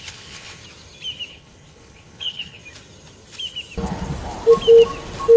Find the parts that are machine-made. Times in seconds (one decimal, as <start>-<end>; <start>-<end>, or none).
0.0-0.6; 1.3-2.6